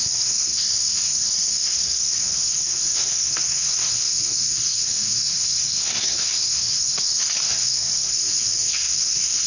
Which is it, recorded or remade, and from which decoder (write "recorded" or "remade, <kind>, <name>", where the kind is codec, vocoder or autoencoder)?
remade, codec, SNAC